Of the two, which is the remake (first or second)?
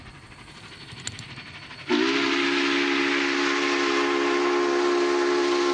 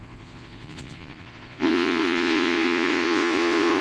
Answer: second